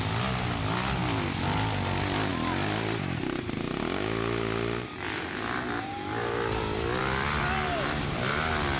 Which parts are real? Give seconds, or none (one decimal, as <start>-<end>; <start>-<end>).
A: 0.0-8.8